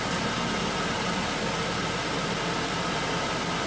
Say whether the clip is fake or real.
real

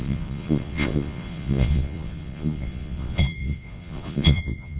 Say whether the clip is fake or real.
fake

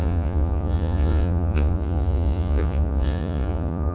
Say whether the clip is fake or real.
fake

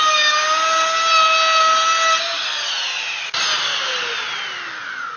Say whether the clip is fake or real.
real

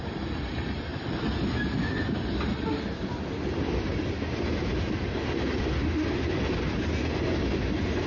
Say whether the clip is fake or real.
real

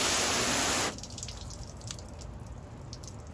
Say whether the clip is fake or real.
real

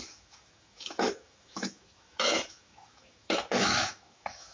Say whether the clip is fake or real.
fake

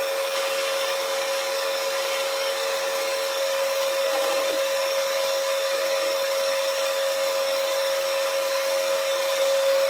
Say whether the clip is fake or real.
fake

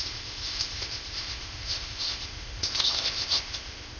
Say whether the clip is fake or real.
fake